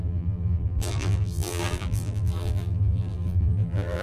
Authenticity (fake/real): fake